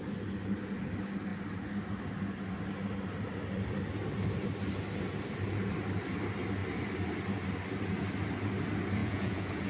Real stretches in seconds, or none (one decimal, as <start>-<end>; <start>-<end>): 0.0-9.0

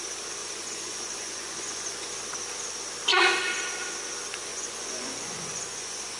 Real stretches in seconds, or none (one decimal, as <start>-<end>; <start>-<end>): 0.0-0.4; 2.1-4.5

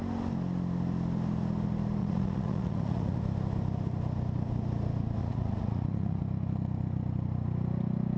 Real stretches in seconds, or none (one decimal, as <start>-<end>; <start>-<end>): 0.0-2.0; 3.2-5.2; 6.2-8.2

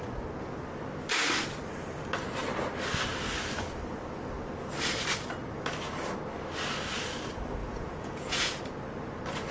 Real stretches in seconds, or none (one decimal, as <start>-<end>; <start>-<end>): 0.0-7.6; 8.6-9.5

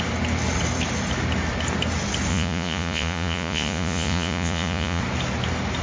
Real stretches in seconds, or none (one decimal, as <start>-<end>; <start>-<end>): 0.0-2.3; 5.0-5.8

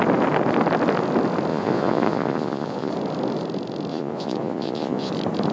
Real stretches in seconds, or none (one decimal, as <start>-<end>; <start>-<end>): 0.0-1.5; 2.9-3.9; 5.1-5.5